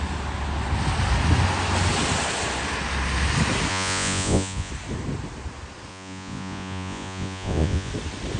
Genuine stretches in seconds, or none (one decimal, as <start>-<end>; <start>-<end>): 0.0-3.7; 4.7-5.9; 7.9-8.4